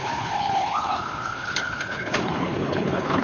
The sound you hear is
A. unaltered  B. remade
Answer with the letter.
B